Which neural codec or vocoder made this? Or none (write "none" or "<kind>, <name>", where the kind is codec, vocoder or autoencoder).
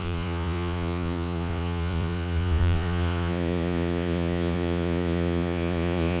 vocoder, Vocos